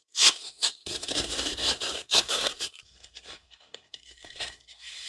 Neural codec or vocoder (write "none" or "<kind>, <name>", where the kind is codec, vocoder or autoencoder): codec, SNAC